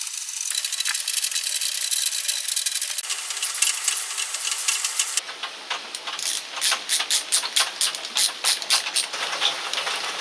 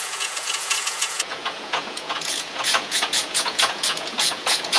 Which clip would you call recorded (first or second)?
first